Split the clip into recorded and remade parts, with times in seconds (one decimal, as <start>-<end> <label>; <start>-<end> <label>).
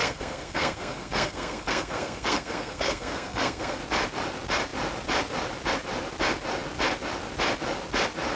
0.0-3.8 remade; 3.8-8.4 recorded